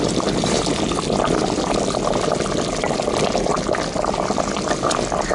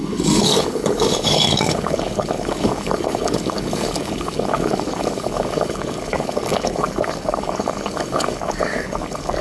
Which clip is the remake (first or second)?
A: second